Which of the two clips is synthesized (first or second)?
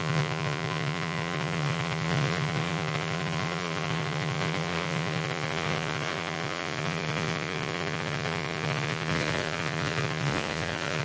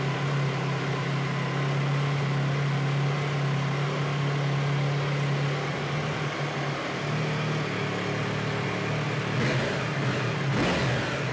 first